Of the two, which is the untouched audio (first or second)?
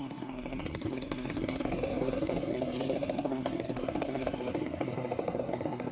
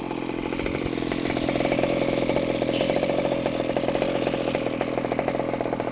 second